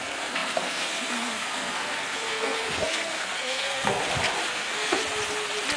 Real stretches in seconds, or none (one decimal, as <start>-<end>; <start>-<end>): 4.0-4.5; 5.0-5.8